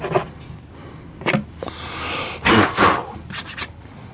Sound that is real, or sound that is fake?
real